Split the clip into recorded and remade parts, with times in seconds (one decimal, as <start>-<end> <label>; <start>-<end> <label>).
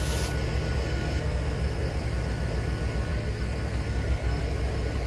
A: 0.0-0.8 recorded; 0.8-2.0 remade; 2.0-3.1 recorded; 3.1-4.4 remade; 4.4-5.1 recorded